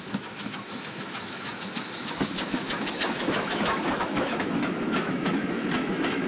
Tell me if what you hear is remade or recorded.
remade